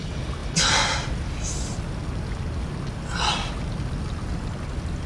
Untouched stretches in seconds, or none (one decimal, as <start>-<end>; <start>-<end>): 0.0-5.1